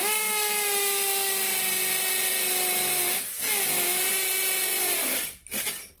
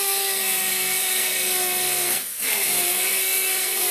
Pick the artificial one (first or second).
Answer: second